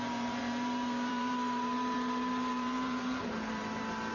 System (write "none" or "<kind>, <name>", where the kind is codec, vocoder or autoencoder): vocoder, BigVGAN v2